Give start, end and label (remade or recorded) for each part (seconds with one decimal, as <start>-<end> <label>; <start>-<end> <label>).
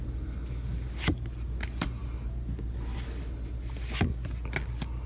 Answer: 0.0-5.1 recorded